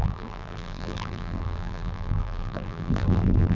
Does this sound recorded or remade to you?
remade